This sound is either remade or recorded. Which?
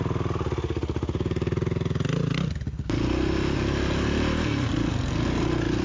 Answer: recorded